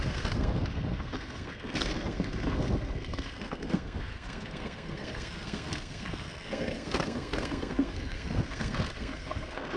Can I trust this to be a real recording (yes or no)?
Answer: no